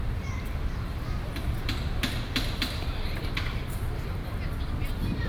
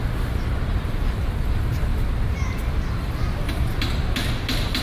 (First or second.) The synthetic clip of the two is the first